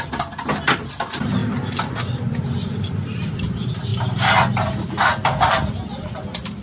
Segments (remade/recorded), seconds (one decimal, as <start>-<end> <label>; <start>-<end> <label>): 0.0-1.4 recorded; 1.4-2.0 remade; 2.0-3.9 recorded; 3.9-5.0 remade; 5.0-6.6 recorded